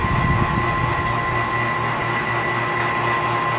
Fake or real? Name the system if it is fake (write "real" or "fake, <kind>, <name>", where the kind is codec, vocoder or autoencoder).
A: real